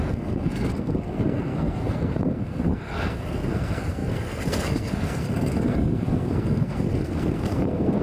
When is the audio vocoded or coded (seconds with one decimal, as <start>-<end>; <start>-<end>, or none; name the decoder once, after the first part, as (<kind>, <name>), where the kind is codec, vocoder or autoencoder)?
0.0-8.0 (codec, SNAC)